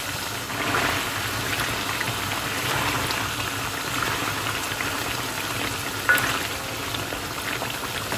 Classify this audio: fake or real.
real